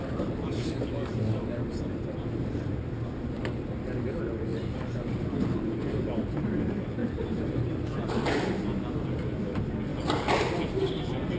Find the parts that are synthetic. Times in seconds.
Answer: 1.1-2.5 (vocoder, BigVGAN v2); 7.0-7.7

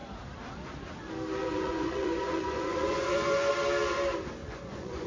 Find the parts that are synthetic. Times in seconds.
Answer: 1.4-3.5 (vocoder, Vocos); 4.4-5.1

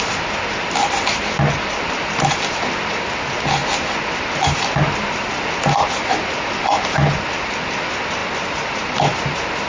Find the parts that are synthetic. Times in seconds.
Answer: none

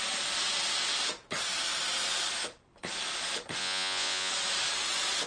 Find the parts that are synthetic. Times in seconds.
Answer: 3.6-4.3 (vocoder, Vocos)

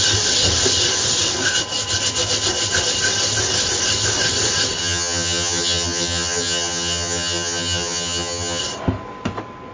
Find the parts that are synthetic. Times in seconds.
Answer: 4.8-8.6 (vocoder, HiFi-GAN)

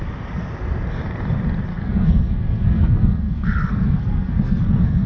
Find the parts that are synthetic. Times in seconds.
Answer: 1.7-5.1 (codec, SNAC)

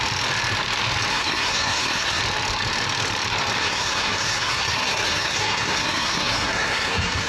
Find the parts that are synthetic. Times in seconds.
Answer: 1.1-2.2 (codec, SNAC); 3.6-7.3

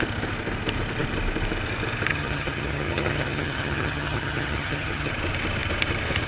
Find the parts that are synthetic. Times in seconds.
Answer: 2.1-5.1 (vocoder, HiFi-GAN)